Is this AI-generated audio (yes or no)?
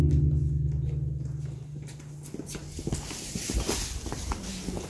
no